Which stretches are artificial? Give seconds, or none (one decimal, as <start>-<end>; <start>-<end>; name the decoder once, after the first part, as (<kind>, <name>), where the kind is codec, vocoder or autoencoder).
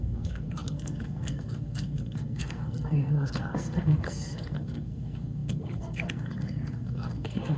0.0-7.6 (codec, SNAC)